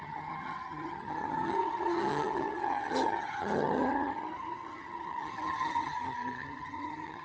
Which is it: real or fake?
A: fake